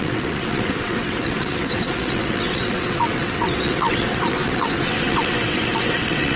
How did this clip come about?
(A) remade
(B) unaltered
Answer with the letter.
A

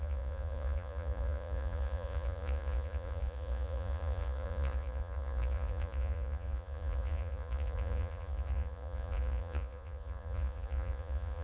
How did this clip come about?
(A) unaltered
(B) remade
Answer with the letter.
B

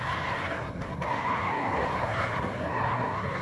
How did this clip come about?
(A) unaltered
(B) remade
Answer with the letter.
B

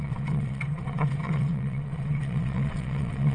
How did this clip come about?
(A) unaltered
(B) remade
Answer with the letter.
B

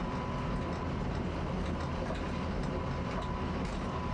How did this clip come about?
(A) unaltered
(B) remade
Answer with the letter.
A